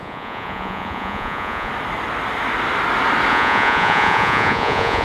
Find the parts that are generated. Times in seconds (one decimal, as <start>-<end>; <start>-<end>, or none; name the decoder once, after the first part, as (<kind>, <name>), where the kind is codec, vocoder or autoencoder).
0.0-1.7 (vocoder, Vocos); 3.3-5.0